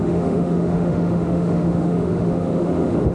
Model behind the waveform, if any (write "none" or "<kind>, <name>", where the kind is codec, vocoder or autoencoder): autoencoder, DAC-VAE